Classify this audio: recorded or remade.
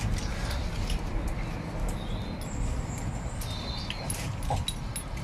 recorded